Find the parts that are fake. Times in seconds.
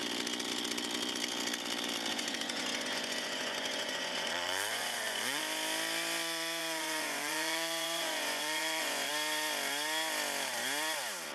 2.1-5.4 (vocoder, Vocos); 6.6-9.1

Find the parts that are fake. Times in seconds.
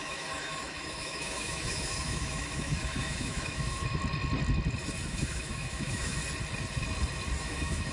0.0-4.0 (autoencoder, DAC-VAE); 5.1-6.2; 7.4-7.9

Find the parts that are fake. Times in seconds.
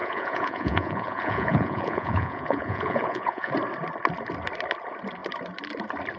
0.0-3.5 (vocoder, Vocos)